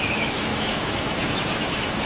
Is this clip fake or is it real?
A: fake